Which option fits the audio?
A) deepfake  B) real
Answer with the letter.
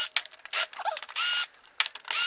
B